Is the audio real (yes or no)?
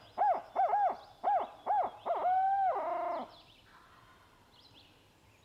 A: yes